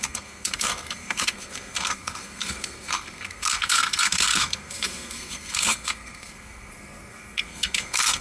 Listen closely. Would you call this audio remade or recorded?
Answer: remade